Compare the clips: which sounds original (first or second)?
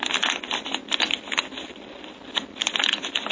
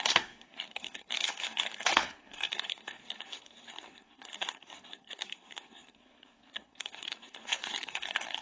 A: first